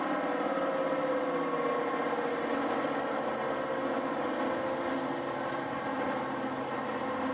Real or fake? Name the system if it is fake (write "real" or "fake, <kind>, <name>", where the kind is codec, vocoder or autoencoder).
real